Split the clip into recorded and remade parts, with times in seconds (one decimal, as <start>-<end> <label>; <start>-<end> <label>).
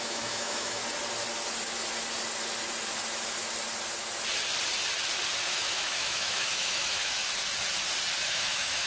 0.0-0.8 remade; 0.8-5.5 recorded; 5.5-7.2 remade; 7.2-8.2 recorded; 8.2-8.9 remade